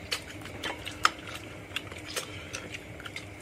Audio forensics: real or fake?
fake